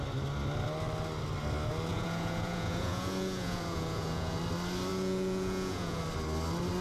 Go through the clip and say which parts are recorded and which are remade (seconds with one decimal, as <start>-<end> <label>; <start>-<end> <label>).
0.0-1.9 recorded; 1.9-4.4 remade; 4.4-4.9 recorded; 4.9-6.0 remade; 6.0-6.8 recorded